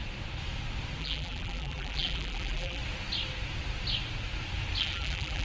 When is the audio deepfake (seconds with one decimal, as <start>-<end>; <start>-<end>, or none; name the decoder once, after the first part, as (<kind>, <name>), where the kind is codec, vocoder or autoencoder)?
1.0-2.8 (vocoder, BigVGAN v2); 4.8-5.4